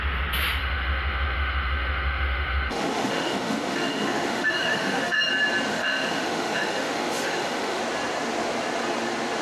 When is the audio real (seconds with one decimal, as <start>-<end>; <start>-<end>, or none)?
0.0-0.6; 5.3-5.7; 7.8-9.4